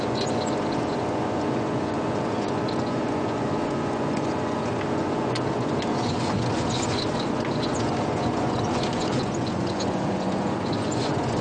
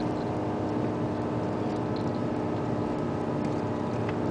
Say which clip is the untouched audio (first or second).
second